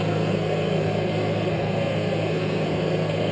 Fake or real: fake